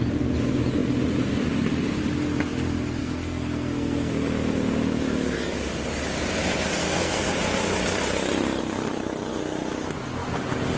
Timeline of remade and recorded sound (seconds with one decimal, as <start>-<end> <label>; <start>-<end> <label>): 0.0-3.0 recorded; 3.0-4.1 remade; 4.1-6.8 recorded; 6.8-7.3 remade; 7.3-10.8 recorded